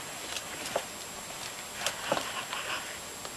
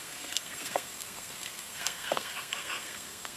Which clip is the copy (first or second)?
second